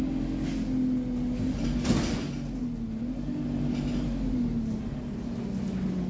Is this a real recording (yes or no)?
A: yes